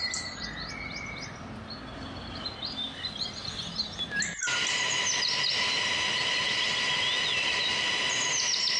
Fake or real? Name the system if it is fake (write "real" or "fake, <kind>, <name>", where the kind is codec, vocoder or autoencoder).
real